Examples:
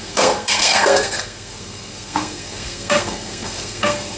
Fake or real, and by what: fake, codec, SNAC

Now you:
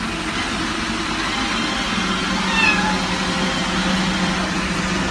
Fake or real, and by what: real